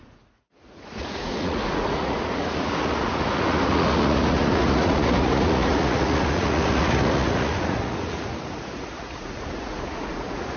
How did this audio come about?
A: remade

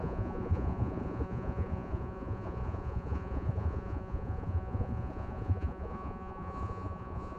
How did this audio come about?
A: remade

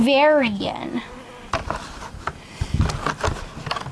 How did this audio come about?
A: recorded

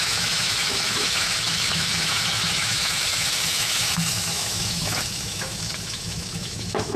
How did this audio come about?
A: remade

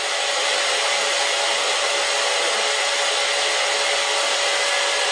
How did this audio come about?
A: recorded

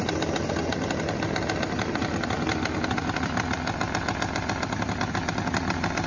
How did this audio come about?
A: recorded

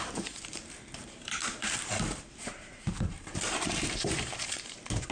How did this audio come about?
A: remade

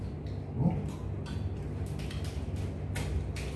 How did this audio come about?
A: recorded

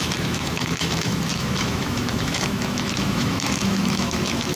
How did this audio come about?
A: remade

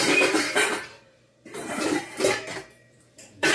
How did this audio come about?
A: remade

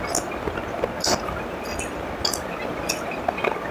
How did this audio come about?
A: recorded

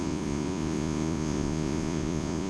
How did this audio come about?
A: remade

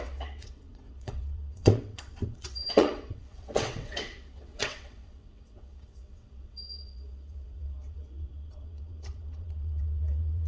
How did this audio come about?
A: remade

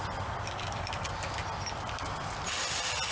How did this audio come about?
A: recorded